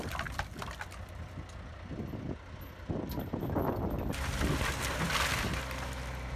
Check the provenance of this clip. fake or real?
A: real